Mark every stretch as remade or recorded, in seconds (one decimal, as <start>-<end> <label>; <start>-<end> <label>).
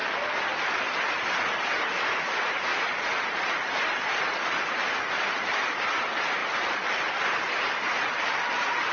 0.0-1.1 recorded; 1.1-2.7 remade; 2.7-3.5 recorded; 3.5-5.4 remade; 5.4-6.0 recorded; 6.0-6.4 remade; 6.4-7.0 recorded; 7.0-8.9 remade